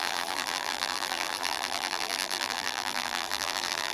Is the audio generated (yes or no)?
yes